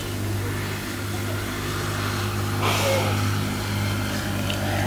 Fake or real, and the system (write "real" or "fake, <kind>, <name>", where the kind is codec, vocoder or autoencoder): real